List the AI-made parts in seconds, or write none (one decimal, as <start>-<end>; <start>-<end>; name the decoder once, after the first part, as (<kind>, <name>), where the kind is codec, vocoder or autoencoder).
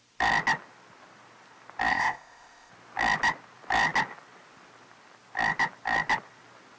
1.9-2.7 (codec, ZipCodec)